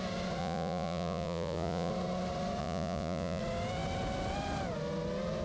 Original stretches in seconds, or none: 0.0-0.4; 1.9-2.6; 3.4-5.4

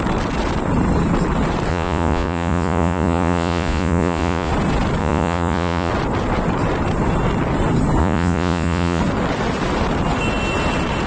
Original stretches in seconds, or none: 0.0-1.7; 4.5-5.0; 5.9-8.0; 9.0-11.1

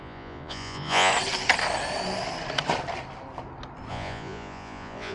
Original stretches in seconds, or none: 1.1-3.9

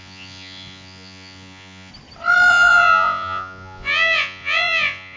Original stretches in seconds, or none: 1.9-2.5

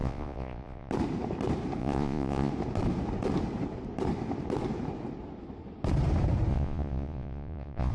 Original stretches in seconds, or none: 0.9-1.8; 2.5-6.5

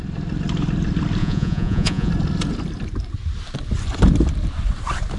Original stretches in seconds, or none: 0.0-1.2; 2.1-5.2